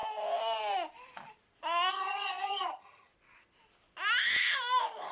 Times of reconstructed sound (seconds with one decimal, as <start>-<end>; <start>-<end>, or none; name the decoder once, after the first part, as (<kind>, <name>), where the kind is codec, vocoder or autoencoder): 1.9-3.1 (vocoder, HiFi-GAN)